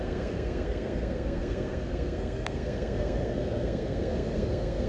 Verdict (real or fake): fake